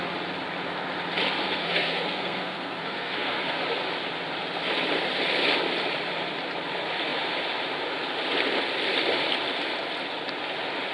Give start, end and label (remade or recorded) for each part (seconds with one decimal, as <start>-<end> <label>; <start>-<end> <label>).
0.0-1.4 recorded; 1.4-3.6 remade; 3.6-10.9 recorded